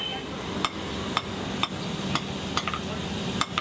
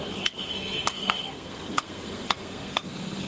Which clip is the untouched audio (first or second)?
first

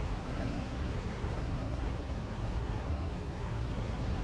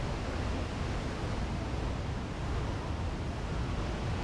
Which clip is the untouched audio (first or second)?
second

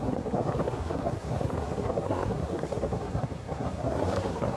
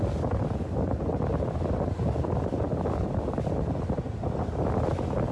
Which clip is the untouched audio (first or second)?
second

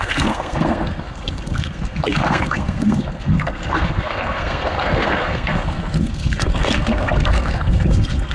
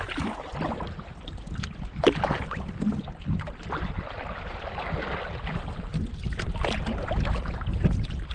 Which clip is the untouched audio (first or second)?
second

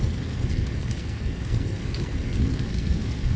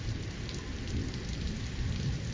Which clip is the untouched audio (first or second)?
second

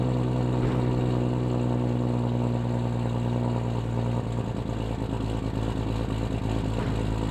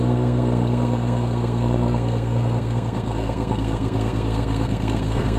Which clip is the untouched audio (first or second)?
first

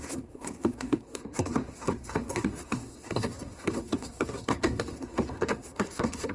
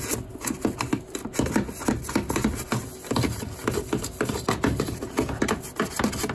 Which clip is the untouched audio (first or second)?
second